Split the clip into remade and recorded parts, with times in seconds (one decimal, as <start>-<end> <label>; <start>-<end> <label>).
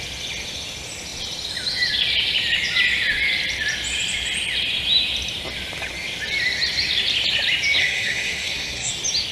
0.0-7.8 recorded; 7.8-8.9 remade; 8.9-9.3 recorded